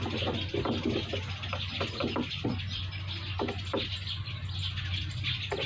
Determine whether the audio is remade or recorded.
recorded